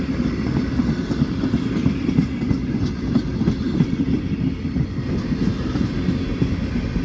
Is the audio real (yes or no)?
yes